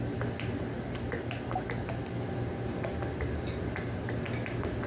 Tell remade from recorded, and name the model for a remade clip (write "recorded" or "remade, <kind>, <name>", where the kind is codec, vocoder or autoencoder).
recorded